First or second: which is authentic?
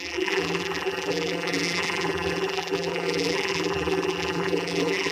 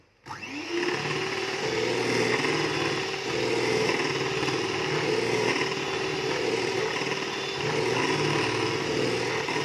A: second